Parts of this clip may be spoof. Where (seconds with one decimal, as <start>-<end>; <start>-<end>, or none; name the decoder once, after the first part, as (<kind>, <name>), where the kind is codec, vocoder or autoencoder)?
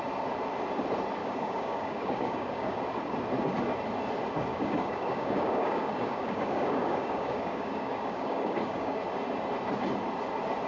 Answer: 1.2-2.8 (codec, DAC); 4.5-9.0